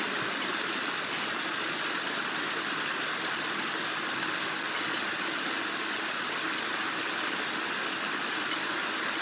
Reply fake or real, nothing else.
real